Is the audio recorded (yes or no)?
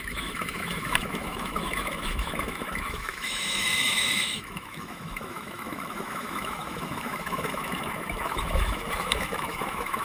no